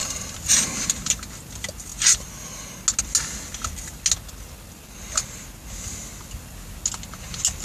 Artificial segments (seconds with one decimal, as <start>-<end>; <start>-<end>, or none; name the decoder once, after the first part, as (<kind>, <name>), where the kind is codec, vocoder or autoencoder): none